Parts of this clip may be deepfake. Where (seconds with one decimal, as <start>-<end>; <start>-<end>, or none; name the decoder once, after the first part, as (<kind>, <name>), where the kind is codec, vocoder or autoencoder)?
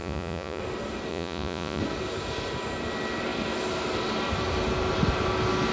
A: 0.0-0.6 (vocoder, Vocos); 1.1-1.8